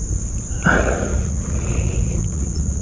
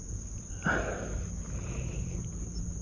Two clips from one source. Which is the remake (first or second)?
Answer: first